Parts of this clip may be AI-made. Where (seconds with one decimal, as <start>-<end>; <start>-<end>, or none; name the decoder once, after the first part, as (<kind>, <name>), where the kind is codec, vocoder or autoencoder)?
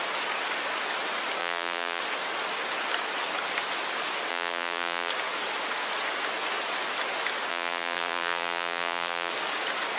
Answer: 1.4-2.0 (vocoder, BigVGAN v2); 4.3-5.1; 7.5-9.3